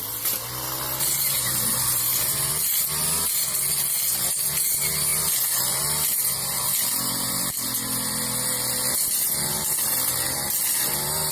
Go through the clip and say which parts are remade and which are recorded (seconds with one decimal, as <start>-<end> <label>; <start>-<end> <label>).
0.0-11.3 recorded